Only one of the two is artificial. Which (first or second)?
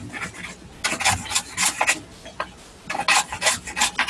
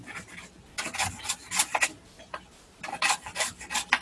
second